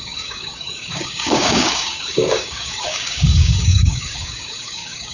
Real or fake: fake